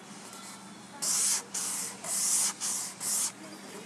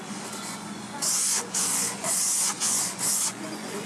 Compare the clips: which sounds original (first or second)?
first